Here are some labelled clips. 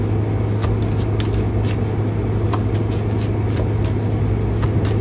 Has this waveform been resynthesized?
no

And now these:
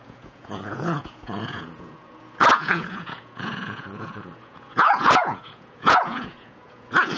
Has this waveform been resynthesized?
yes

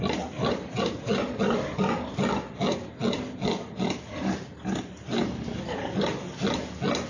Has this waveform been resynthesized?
no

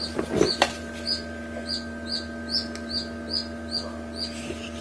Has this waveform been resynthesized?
no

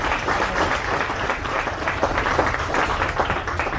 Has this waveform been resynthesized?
no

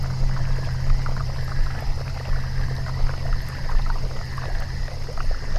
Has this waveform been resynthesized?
no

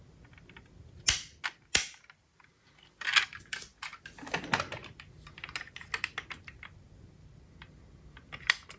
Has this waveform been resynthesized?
no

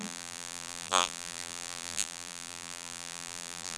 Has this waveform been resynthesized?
yes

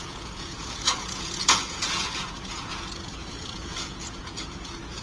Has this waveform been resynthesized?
yes